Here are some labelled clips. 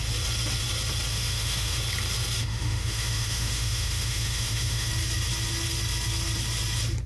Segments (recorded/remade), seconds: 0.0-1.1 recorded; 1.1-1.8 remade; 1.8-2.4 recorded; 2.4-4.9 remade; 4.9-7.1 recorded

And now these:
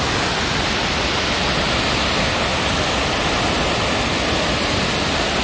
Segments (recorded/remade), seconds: 0.0-5.4 recorded

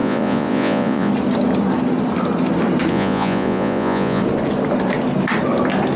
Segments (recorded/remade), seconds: 0.0-1.1 remade; 1.1-2.9 recorded; 2.9-4.2 remade; 4.2-6.0 recorded

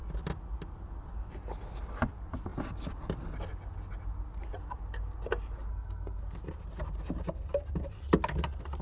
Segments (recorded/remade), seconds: 0.0-5.7 recorded; 5.7-6.2 remade; 6.2-8.8 recorded

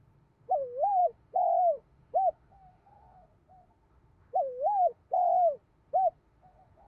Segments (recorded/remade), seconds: 0.0-6.9 remade

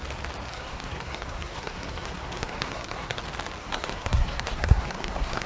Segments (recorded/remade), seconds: 0.0-0.4 recorded; 0.4-3.2 remade; 3.2-3.6 recorded; 3.6-5.5 remade

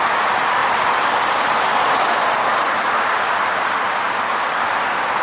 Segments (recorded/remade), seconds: 0.0-0.6 recorded; 0.6-2.1 remade; 2.1-2.5 recorded; 2.5-3.1 remade; 3.1-5.2 recorded

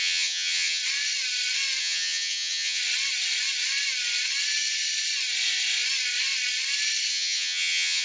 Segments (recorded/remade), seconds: 0.0-0.8 remade; 0.8-1.8 recorded; 1.8-2.8 remade; 2.8-7.1 recorded; 7.1-8.0 remade